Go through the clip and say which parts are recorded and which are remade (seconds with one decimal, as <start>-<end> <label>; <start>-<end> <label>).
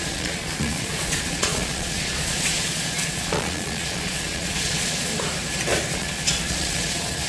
0.0-5.1 remade; 5.1-5.9 recorded; 5.9-7.3 remade